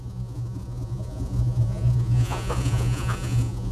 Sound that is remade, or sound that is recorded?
remade